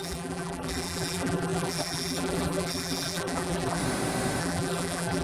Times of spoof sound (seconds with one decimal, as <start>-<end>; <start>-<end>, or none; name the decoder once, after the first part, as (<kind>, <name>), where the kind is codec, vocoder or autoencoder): 0.0-3.8 (vocoder, BigVGAN v2); 4.4-5.2